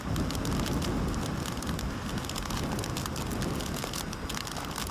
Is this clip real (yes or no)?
yes